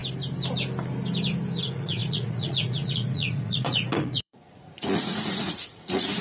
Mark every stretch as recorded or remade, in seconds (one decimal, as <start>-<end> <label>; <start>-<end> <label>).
0.0-1.6 recorded; 1.6-6.2 remade